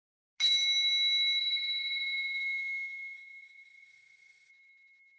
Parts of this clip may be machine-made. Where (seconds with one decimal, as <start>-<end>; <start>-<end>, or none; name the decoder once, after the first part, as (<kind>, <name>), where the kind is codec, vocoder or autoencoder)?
1.4-4.5 (autoencoder, DAC-VAE)